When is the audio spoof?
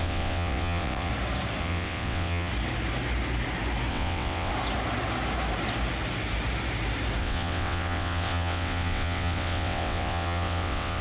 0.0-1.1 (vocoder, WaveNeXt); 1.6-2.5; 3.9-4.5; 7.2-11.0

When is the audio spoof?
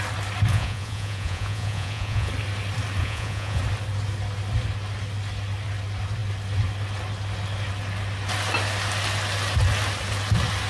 0.5-2.3 (vocoder, Vocos); 3.0-3.6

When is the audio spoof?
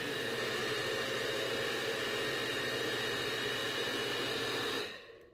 none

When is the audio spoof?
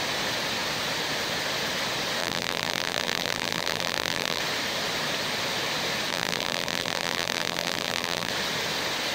2.2-4.4 (vocoder, BigVGAN v2); 6.1-8.3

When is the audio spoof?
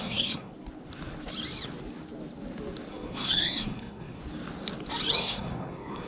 0.0-0.5 (codec, SNAC); 2.9-4.2; 5.2-6.1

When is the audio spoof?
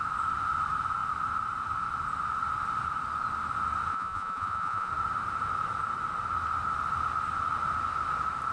3.9-4.9 (vocoder, Vocos)